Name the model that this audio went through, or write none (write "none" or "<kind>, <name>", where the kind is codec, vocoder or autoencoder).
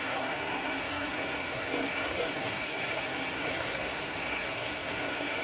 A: codec, SNAC